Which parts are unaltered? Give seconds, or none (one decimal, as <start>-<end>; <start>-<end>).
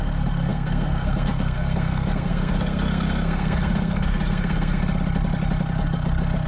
4.8-6.5